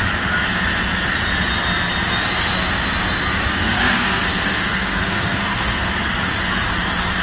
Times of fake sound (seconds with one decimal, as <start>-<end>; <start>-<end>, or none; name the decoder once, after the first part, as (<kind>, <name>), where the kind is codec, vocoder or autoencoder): 3.5-5.9 (codec, SNAC)